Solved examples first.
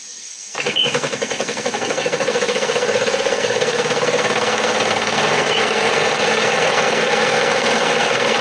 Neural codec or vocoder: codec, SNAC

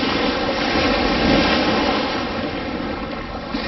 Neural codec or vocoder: none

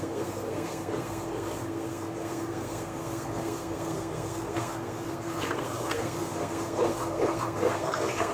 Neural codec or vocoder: codec, SNAC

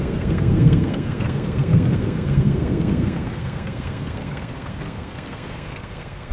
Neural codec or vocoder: codec, SNAC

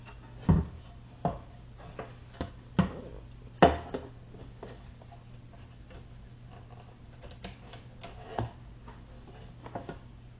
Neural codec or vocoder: none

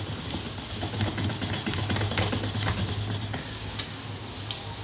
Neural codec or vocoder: none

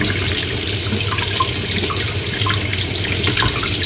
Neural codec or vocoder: none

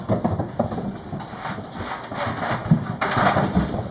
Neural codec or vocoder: none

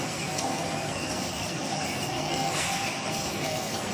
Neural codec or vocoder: codec, SNAC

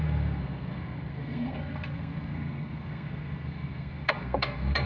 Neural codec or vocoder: codec, SNAC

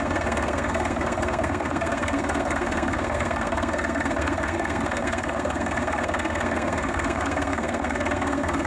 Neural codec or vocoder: codec, SNAC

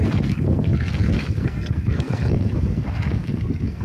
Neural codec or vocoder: codec, SNAC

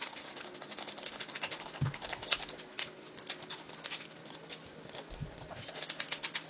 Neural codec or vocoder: none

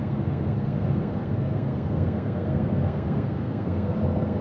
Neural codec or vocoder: codec, SNAC